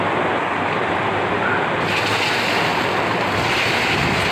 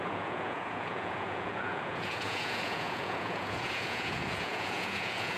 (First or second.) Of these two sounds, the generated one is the second